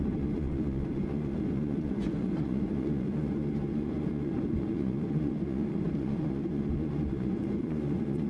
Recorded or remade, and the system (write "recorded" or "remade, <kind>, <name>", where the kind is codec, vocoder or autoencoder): remade, vocoder, Vocos